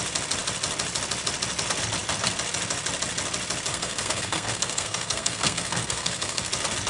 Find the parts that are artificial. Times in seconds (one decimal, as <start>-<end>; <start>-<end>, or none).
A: 3.7-6.5